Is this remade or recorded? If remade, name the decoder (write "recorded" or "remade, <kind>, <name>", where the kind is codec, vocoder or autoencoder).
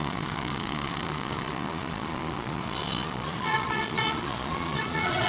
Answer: remade, vocoder, Vocos